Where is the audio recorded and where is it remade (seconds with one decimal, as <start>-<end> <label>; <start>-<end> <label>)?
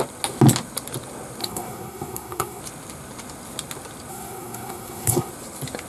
0.0-1.4 recorded; 1.4-2.6 remade; 2.6-4.1 recorded; 4.1-5.3 remade; 5.3-5.9 recorded